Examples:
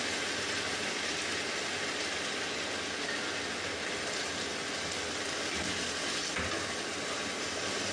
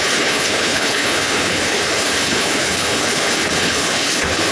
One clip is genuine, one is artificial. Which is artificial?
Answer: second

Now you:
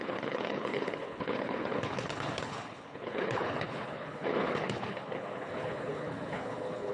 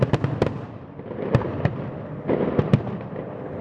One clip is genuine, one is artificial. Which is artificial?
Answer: first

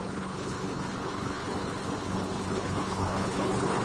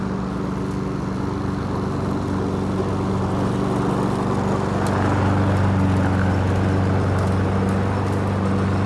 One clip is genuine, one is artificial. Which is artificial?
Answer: first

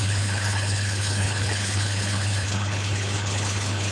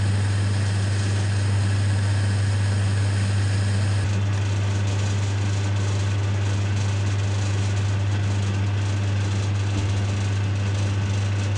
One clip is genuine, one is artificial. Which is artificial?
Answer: first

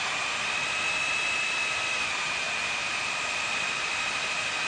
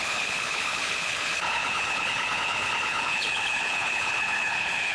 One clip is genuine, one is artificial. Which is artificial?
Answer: second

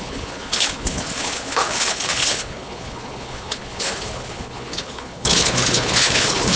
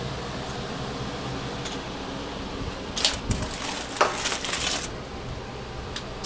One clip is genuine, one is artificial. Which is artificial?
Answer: first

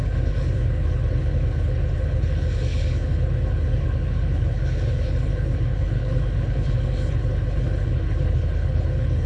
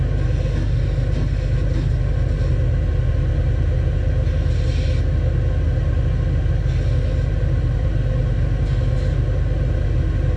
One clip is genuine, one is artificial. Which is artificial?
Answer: first